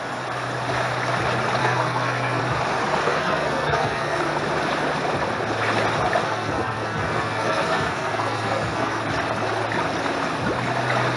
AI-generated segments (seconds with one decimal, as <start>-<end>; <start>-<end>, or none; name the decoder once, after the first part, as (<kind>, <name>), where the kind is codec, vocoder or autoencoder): 1.6-2.4 (codec, SNAC); 3.0-4.2; 6.2-9.0